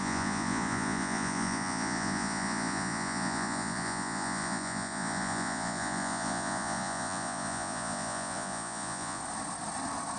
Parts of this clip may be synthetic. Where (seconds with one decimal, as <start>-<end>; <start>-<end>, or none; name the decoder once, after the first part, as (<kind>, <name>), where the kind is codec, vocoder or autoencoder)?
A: 0.0-9.2 (vocoder, Vocos)